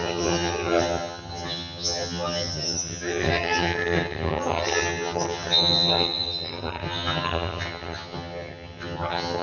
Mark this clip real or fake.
fake